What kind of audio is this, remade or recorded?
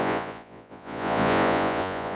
remade